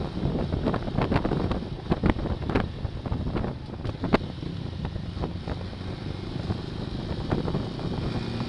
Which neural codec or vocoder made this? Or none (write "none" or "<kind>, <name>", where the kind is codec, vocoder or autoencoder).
none